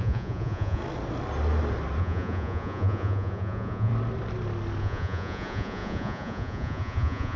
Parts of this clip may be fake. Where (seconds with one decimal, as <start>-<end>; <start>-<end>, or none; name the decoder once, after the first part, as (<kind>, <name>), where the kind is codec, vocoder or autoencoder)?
0.0-0.8 (vocoder, Vocos); 2.0-3.9; 4.8-7.4